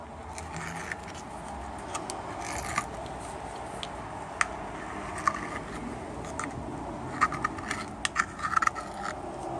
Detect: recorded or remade recorded